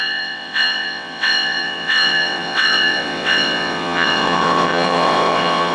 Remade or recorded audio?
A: remade